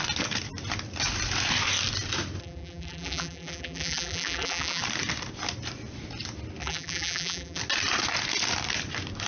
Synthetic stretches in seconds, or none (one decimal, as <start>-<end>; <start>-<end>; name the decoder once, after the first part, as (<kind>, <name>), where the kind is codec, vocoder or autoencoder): 2.4-4.8 (vocoder, BigVGAN v2); 6.6-7.6

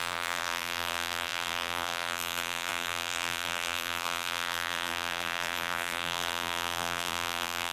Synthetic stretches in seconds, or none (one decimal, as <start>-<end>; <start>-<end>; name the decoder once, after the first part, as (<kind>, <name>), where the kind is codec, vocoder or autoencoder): 0.0-7.7 (vocoder, BigVGAN v2)

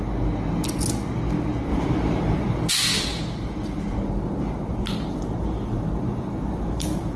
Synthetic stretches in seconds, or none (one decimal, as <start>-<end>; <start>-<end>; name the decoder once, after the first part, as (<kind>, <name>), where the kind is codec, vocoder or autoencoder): 1.7-2.7 (vocoder, BigVGAN v2); 3.1-7.2